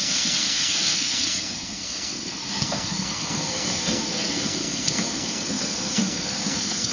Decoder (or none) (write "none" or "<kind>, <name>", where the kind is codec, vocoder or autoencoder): codec, SNAC